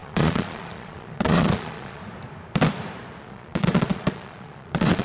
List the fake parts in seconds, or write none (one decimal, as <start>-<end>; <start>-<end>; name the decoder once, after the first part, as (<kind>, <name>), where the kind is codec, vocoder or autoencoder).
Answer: 0.0-2.0 (vocoder, Vocos); 3.2-5.0